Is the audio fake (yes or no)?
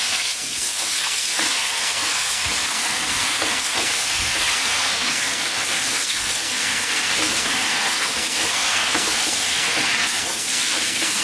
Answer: yes